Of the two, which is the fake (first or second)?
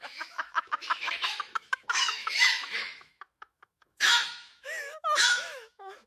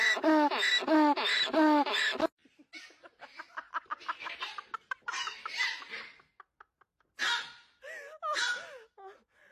first